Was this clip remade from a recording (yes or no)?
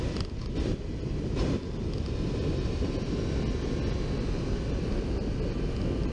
no